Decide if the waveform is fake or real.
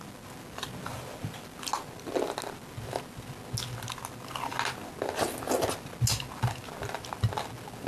real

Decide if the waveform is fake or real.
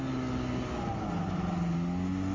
real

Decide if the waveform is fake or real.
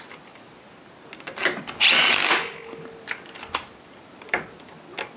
real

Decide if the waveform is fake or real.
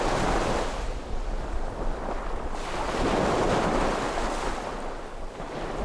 real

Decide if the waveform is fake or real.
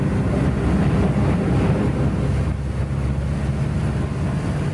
real